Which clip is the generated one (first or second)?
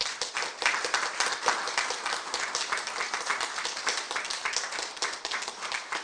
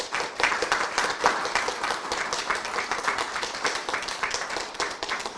second